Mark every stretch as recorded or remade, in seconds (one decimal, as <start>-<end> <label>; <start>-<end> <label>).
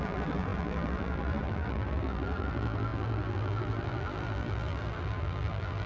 0.0-5.9 remade